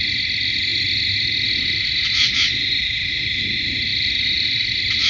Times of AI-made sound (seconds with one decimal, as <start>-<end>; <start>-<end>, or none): none